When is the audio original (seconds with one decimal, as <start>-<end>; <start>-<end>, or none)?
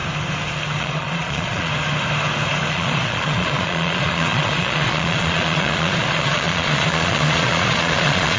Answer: 0.0-0.8; 1.7-2.7